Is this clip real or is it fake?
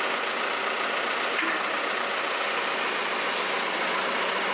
real